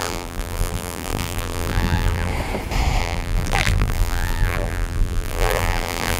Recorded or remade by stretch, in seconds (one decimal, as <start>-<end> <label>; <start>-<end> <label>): 0.0-2.3 remade; 2.3-3.0 recorded; 3.0-6.2 remade